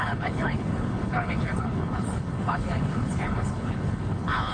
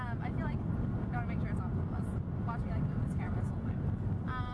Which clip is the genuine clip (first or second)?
second